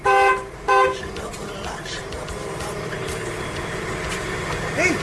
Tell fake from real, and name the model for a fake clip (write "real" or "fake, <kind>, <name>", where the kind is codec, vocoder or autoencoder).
real